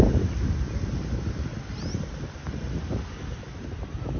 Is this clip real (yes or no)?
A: yes